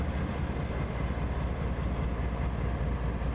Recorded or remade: recorded